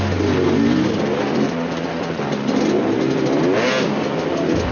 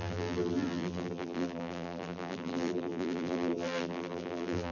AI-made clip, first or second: second